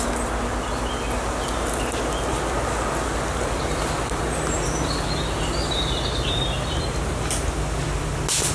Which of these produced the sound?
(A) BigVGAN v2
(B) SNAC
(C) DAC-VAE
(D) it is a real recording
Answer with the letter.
D